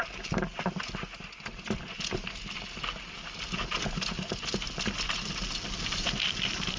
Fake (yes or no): no